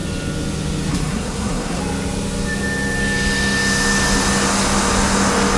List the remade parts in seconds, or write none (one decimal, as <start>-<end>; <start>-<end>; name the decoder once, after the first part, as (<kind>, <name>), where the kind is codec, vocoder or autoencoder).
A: 0.9-1.8 (codec, SNAC)